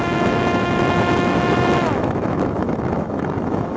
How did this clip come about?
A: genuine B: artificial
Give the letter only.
B